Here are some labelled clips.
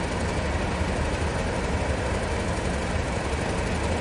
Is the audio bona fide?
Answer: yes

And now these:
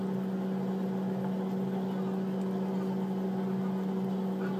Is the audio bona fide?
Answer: yes